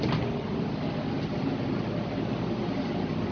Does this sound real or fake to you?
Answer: real